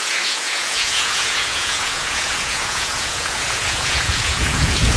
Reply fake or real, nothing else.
fake